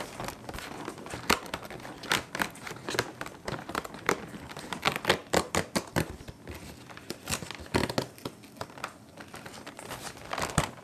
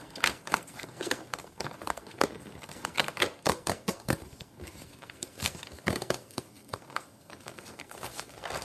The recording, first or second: first